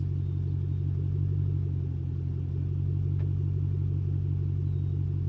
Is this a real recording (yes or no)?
yes